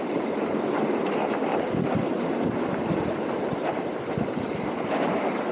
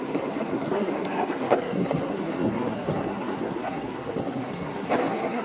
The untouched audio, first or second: first